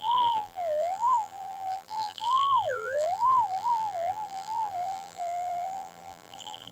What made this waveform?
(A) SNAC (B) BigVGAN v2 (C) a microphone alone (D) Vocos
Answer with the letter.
B